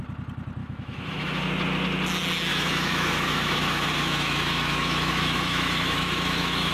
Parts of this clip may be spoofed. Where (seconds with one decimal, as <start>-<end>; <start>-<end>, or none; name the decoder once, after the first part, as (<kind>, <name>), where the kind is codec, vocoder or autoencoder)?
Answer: 0.6-1.4 (autoencoder, DAC-VAE); 2.5-6.7